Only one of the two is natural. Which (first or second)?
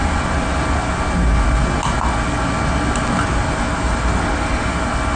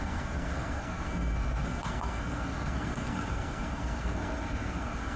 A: first